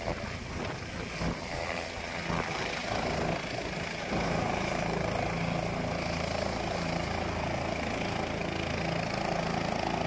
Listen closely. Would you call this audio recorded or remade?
recorded